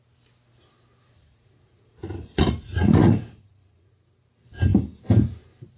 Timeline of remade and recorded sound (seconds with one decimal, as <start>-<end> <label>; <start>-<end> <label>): 0.0-1.0 recorded; 1.0-3.9 remade; 3.9-5.8 recorded

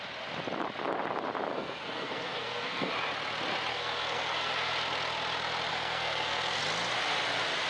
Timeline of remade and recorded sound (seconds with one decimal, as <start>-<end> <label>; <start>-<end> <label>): 0.0-1.5 recorded; 1.5-2.9 remade; 2.9-3.7 recorded; 3.7-4.7 remade; 4.7-5.7 recorded; 5.7-6.6 remade; 6.6-7.7 recorded

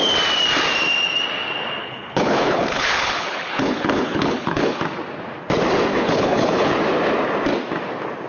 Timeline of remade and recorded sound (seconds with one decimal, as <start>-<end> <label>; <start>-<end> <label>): 0.0-1.8 recorded; 1.8-4.8 remade; 4.8-5.9 recorded; 5.9-6.7 remade; 6.7-8.3 recorded

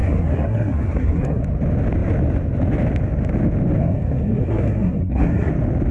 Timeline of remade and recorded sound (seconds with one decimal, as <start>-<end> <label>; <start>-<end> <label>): 0.0-1.4 remade; 1.4-3.8 recorded; 3.8-5.5 remade; 5.5-5.9 recorded

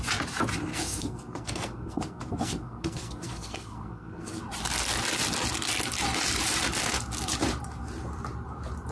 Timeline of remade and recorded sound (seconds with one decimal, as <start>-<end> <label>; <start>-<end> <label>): 0.0-0.7 recorded; 0.7-4.4 remade; 4.4-8.9 recorded

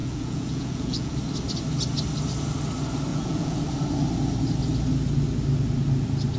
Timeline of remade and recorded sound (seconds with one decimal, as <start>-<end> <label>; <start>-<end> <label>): 0.0-1.1 remade; 1.1-3.1 recorded; 3.1-3.6 remade; 3.6-6.4 recorded

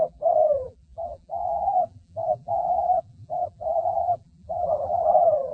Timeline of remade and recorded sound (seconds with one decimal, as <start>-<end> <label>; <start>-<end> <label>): 0.0-5.5 remade

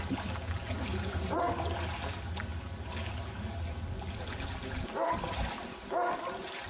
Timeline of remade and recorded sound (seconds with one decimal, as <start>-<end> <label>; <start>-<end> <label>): 0.0-0.9 recorded; 0.9-1.4 remade; 1.4-6.7 recorded